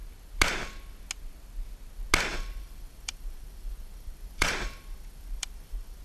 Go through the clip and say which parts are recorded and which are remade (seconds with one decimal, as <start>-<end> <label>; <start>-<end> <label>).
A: 0.0-2.3 recorded; 2.3-6.0 remade